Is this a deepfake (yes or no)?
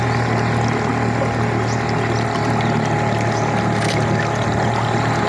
no